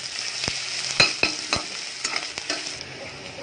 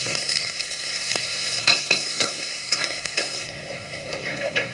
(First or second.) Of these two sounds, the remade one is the second